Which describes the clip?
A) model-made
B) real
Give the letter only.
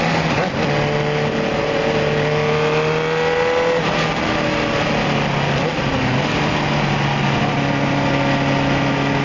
B